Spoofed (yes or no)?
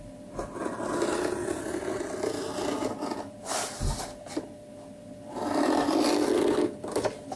no